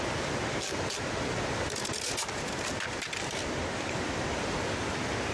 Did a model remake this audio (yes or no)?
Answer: no